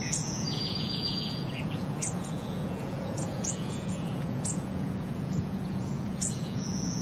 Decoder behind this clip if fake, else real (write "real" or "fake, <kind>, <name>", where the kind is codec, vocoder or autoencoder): fake, vocoder, Vocos